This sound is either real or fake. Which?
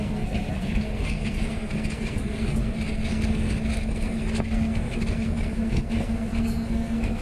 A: fake